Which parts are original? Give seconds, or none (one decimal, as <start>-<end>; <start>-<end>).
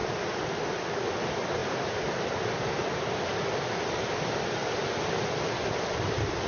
0.9-4.6